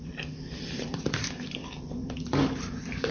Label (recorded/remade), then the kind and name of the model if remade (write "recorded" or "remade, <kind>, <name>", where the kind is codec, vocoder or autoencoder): remade, vocoder, BigVGAN v2